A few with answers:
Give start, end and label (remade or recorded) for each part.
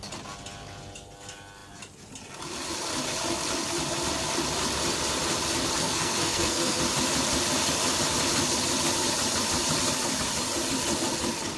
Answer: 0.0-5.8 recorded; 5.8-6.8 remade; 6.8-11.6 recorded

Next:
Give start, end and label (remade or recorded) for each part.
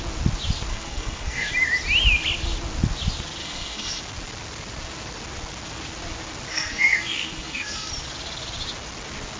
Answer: 0.0-0.7 recorded; 0.7-1.5 remade; 1.5-3.4 recorded; 3.4-4.0 remade; 4.0-6.5 recorded; 6.5-7.9 remade; 7.9-9.4 recorded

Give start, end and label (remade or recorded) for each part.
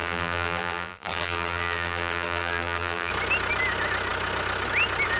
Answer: 0.0-3.1 remade; 3.1-5.2 recorded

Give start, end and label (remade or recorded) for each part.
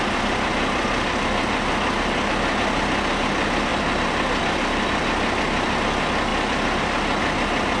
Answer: 0.0-7.8 recorded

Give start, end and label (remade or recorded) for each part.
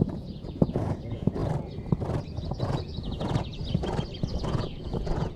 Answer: 0.0-1.4 remade; 1.4-2.2 recorded; 2.2-3.6 remade; 3.6-4.4 recorded; 4.4-5.4 remade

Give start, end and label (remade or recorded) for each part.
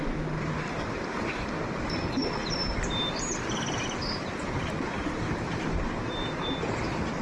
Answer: 0.0-2.4 recorded; 2.4-5.7 remade; 5.7-7.2 recorded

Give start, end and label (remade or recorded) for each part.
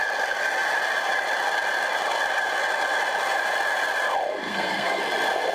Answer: 0.0-4.3 recorded; 4.3-5.0 remade; 5.0-5.5 recorded